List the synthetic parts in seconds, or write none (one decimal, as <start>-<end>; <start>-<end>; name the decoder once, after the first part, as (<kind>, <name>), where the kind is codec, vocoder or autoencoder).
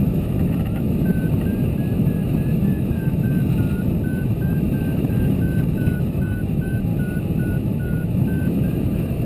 0.0-1.1 (autoencoder, DAC-VAE); 2.0-3.4; 4.1-6.9; 7.5-9.2